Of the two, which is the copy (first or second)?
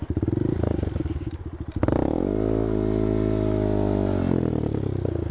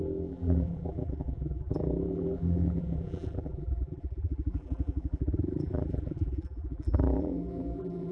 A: second